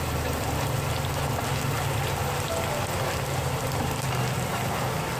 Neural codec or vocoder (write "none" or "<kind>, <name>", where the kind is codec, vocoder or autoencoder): vocoder, BigVGAN v2